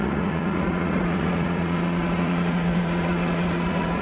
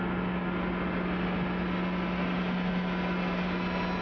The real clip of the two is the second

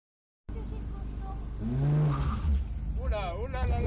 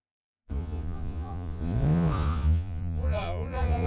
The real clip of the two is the first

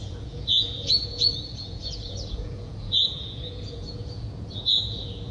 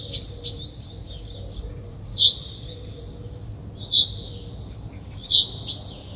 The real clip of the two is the second